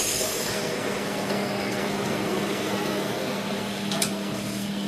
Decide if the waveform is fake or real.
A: fake